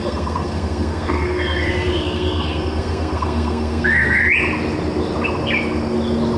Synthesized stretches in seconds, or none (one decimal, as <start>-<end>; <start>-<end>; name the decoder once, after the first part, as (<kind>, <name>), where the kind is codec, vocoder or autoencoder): 0.0-4.2 (codec, SNAC)